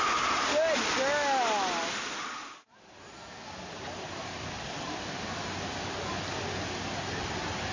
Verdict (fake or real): real